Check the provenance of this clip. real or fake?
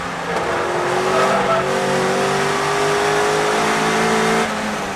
real